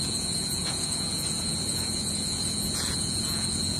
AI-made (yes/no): yes